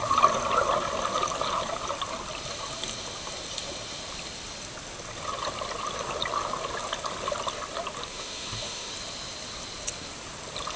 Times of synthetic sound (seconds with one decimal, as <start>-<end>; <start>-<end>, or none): 8.1-8.9